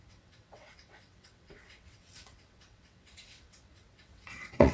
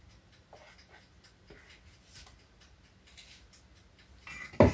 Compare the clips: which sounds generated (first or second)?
first